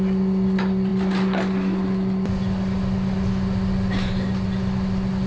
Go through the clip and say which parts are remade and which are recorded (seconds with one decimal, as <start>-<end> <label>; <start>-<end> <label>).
0.0-5.3 recorded